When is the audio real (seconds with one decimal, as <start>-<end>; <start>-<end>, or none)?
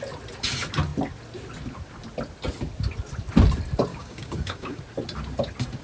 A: 0.0-3.9; 4.8-5.8